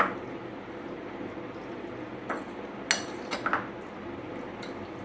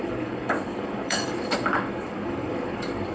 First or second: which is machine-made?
second